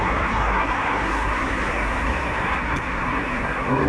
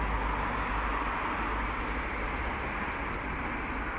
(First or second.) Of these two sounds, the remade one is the first